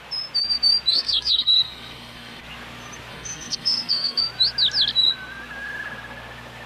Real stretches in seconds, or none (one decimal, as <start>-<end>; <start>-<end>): 0.0-0.9; 2.4-3.1; 4.2-6.7